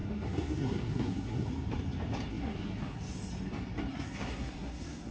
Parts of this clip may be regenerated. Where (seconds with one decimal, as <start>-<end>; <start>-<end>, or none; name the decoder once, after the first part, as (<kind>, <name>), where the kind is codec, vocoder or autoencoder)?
0.0-1.5 (codec, SNAC); 2.3-3.0; 3.9-5.1

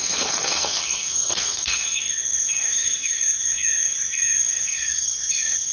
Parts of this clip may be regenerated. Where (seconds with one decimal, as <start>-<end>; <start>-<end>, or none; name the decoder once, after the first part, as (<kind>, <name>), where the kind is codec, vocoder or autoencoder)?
0.0-5.7 (codec, SNAC)

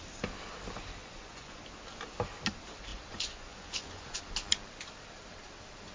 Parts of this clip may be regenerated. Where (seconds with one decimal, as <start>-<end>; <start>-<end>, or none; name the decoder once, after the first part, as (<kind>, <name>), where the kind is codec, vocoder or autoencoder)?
1.0-1.6 (vocoder, Vocos); 2.9-4.2

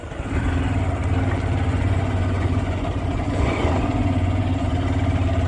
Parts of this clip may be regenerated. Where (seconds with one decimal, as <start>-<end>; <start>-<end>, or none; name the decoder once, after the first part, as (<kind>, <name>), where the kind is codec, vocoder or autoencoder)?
1.7-4.7 (vocoder, Vocos)

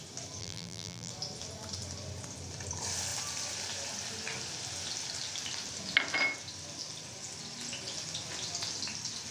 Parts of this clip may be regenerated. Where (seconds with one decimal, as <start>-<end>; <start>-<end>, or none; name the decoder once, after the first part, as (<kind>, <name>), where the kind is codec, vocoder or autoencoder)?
0.4-1.1 (vocoder, BigVGAN v2)